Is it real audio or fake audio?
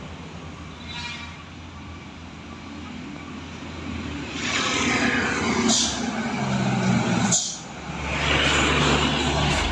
real